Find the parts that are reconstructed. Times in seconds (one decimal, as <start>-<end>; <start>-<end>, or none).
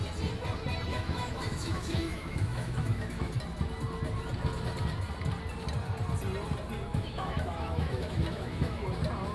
0.9-3.3; 6.9-8.9